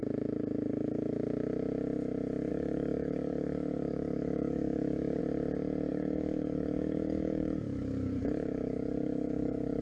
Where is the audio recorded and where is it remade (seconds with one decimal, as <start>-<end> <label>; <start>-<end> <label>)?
0.0-2.5 recorded; 2.5-5.2 remade; 5.2-5.9 recorded; 5.9-9.8 remade